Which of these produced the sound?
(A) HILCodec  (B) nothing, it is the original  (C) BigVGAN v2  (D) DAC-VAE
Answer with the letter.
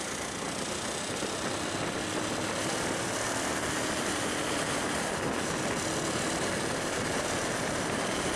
B